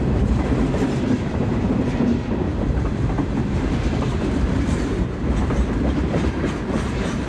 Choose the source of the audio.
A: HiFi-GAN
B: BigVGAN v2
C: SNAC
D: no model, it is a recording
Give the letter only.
B